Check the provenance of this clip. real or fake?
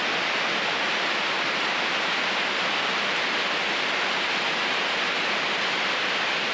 real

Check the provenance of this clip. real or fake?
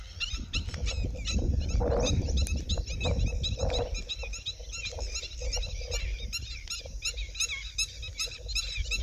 real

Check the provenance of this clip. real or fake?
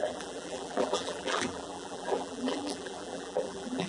fake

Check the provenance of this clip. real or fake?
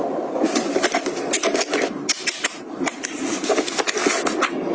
fake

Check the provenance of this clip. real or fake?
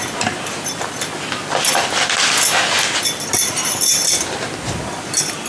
fake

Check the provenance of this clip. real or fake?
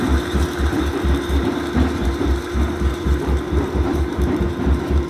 fake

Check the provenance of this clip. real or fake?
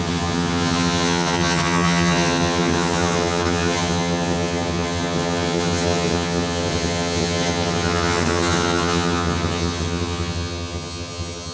fake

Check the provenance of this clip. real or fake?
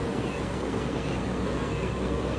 fake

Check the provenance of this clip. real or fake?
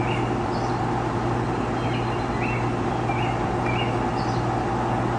real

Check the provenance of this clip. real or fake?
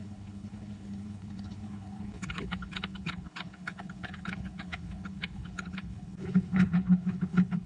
fake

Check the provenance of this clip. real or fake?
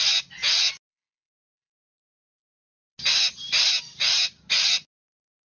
real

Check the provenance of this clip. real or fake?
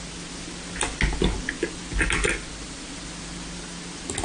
real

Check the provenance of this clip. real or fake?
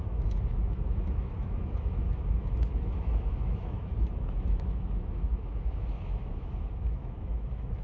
fake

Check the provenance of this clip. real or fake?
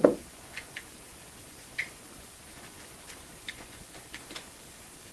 fake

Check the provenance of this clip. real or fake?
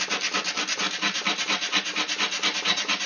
real